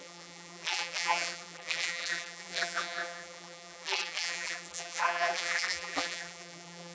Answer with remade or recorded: remade